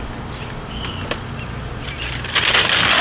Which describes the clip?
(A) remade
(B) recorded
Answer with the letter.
B